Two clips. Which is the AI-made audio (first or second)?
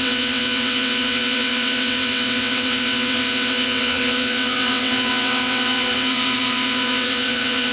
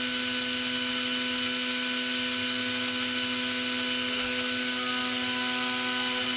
first